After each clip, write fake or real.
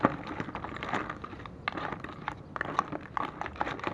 real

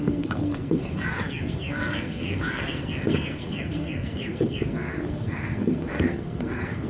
fake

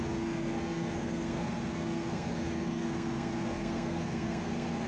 fake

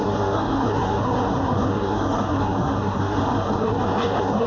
fake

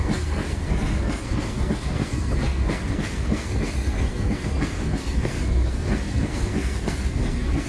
fake